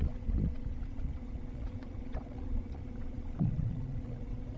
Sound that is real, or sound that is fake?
fake